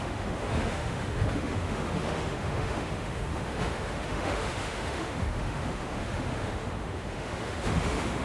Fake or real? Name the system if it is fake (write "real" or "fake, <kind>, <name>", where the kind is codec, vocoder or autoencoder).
fake, autoencoder, DAC-VAE